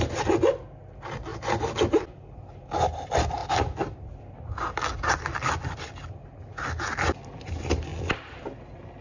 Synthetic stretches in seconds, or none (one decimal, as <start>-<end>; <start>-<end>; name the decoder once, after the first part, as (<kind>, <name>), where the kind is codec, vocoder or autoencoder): none